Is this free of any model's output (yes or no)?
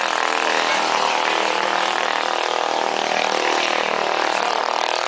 no